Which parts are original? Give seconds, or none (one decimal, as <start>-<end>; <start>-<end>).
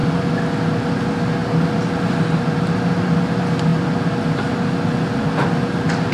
0.0-6.1